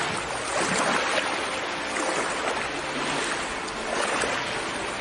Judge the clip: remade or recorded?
recorded